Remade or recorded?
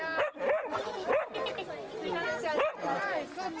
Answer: recorded